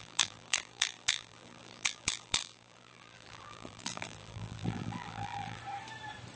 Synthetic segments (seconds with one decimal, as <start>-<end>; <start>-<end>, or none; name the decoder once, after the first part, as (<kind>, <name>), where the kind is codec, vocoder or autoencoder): 0.0-5.6 (vocoder, BigVGAN v2)